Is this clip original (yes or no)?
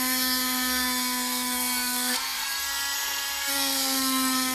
no